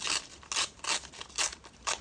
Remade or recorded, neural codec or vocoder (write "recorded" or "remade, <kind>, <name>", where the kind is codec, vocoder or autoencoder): recorded